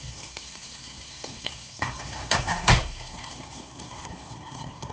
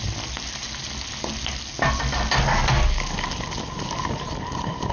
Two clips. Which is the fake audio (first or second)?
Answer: first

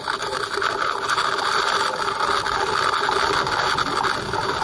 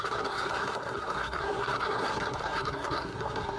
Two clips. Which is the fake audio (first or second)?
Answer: second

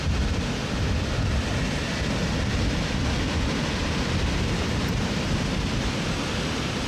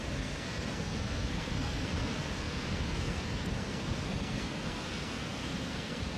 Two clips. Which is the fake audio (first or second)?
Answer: second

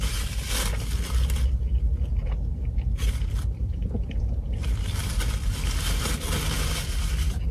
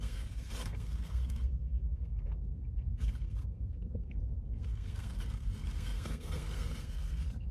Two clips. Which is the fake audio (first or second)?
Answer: second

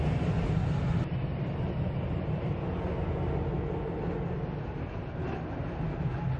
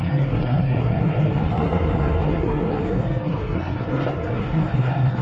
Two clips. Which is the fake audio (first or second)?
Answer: second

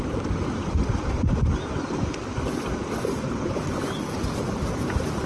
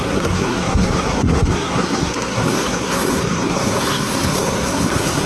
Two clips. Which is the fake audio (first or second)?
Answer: second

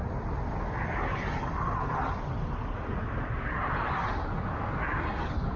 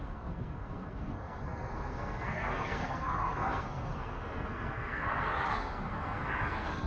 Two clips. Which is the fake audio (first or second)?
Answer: second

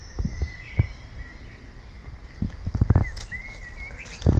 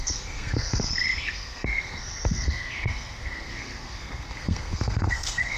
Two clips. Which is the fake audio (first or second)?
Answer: second